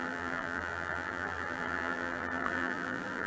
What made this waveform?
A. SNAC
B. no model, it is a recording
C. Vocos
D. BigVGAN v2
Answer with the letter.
D